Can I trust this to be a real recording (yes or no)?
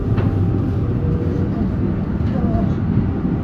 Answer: yes